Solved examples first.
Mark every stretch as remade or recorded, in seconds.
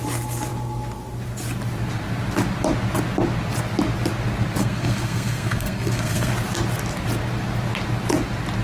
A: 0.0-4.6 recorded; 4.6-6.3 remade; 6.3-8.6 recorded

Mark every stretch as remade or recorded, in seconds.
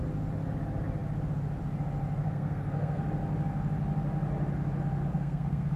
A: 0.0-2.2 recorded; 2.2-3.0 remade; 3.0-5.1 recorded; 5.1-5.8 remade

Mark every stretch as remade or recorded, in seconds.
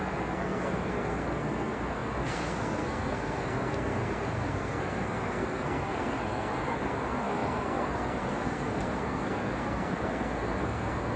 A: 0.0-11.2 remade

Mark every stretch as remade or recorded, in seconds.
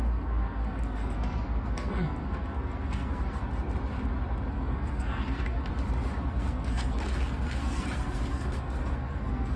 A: 0.0-3.4 remade; 3.4-4.5 recorded; 4.5-5.7 remade; 5.7-6.3 recorded; 6.3-9.6 remade